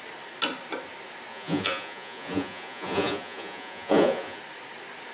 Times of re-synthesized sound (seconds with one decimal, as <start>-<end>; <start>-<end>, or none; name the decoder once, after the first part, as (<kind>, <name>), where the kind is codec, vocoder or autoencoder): 1.3-4.4 (vocoder, Vocos)